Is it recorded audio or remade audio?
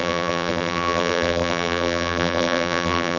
remade